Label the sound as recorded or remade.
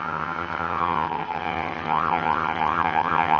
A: remade